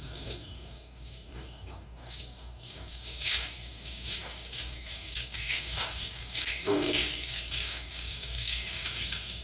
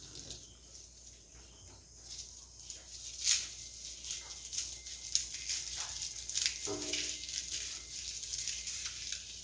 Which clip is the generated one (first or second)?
first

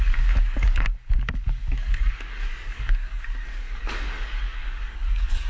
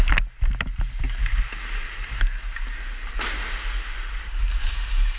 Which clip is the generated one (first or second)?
first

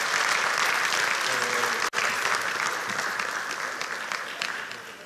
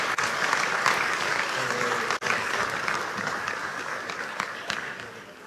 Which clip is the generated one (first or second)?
second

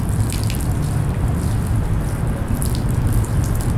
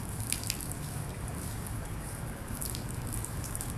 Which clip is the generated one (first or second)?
second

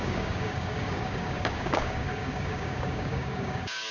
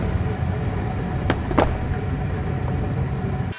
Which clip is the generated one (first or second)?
first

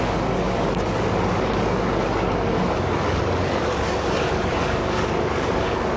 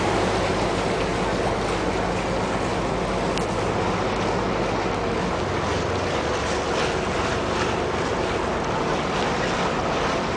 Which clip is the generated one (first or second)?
first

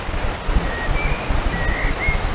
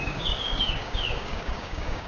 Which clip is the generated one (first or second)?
second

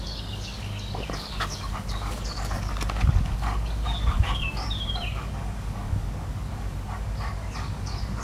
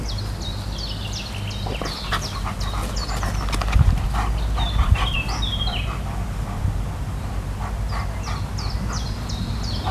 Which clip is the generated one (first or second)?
first